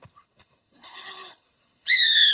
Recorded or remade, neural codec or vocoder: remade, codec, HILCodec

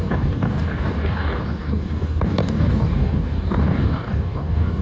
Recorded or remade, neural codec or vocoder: remade, codec, DAC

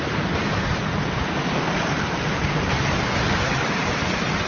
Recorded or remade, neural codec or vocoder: remade, vocoder, BigVGAN v2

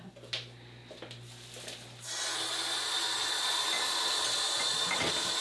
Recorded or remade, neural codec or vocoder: recorded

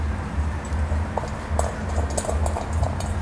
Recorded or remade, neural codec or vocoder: recorded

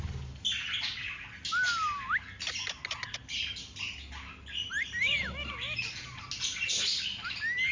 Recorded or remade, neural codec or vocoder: recorded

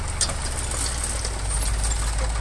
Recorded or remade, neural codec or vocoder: recorded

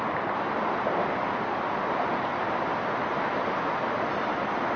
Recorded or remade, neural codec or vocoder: recorded